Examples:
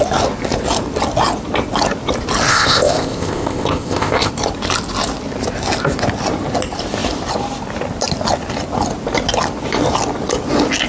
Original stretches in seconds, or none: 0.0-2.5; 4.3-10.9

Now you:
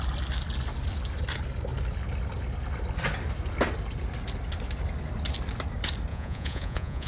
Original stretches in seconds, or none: 0.0-6.1

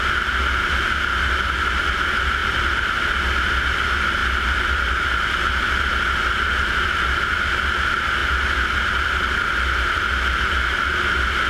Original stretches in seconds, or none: 0.0-11.5

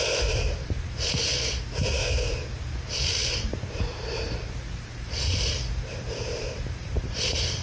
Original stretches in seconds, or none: 1.3-3.3

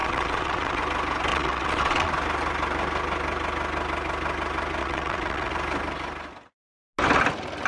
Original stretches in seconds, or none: 0.8-1.3; 2.1-4.8; 5.5-7.7